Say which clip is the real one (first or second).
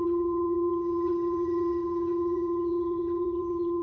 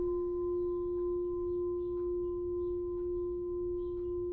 second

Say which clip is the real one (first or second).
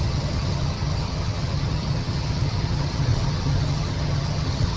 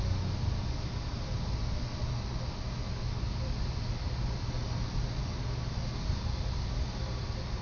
second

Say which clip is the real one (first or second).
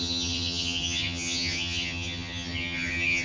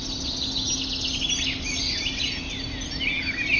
second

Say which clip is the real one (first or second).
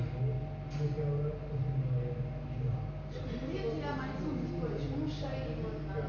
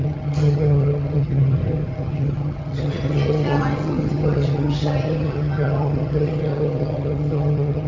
first